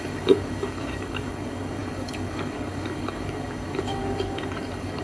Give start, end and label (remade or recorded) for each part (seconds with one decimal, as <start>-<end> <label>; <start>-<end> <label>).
0.0-5.0 remade